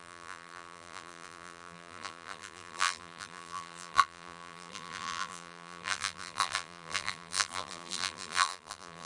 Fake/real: fake